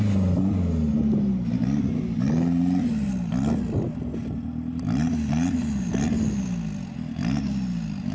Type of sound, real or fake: real